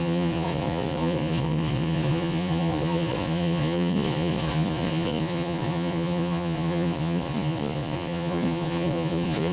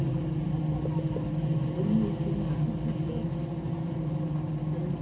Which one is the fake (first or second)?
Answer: first